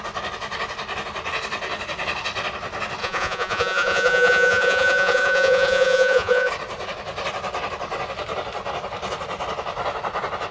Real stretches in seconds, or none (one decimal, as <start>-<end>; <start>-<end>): 0.0-3.0; 6.5-10.5